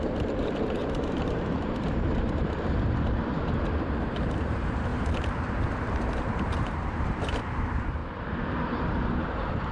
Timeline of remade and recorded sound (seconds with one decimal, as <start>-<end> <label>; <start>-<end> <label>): 0.0-8.0 remade; 8.0-8.8 recorded; 8.8-9.7 remade